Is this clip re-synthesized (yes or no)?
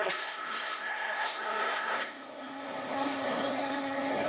yes